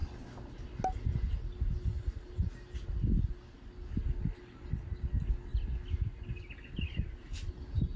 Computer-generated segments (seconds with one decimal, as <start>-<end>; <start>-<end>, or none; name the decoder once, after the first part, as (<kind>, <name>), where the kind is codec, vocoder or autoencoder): none